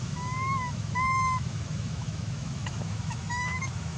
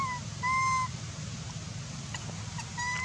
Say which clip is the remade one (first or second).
first